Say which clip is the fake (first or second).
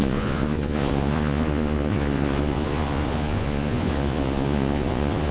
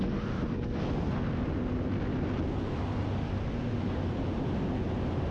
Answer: first